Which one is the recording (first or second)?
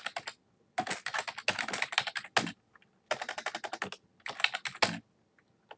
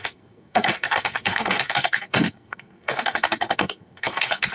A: first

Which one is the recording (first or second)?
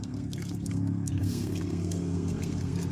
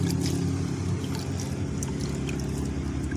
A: second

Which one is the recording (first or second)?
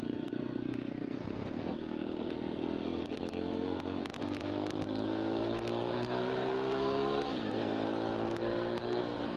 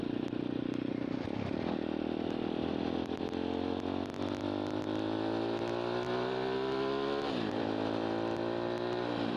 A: second